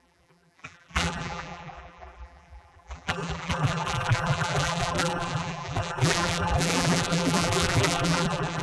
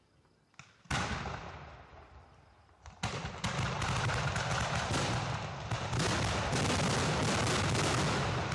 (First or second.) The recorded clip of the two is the second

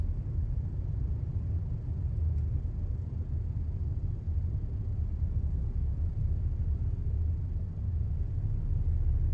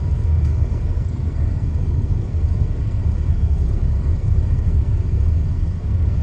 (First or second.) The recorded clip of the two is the first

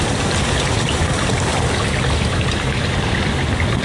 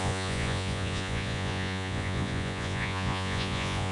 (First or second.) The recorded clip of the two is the first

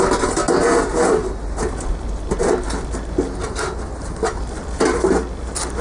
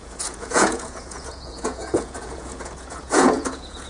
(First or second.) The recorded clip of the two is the first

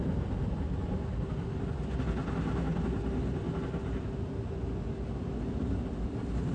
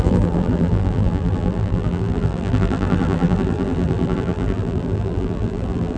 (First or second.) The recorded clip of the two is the first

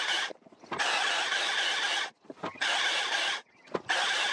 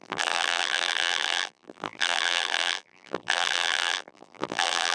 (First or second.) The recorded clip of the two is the first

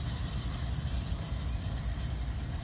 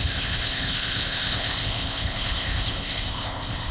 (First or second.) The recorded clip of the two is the first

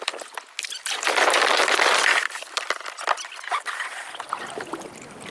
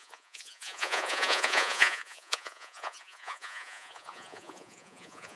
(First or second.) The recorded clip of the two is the first